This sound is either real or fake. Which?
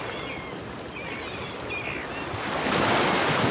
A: real